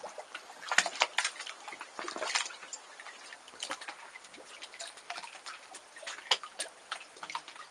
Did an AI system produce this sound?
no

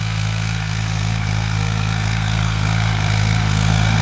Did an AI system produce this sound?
yes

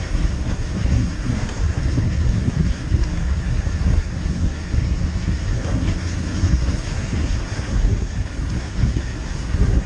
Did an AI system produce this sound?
yes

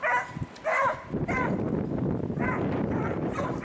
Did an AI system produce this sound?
no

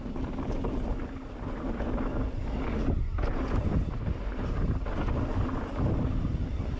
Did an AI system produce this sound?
no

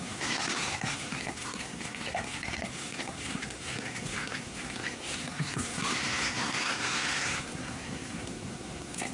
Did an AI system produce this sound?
yes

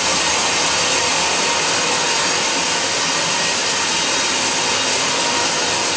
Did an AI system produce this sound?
no